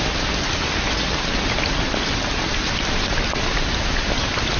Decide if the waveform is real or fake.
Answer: real